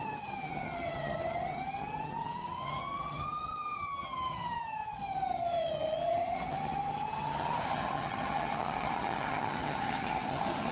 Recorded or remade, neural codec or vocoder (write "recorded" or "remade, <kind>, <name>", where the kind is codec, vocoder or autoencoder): remade, vocoder, HiFi-GAN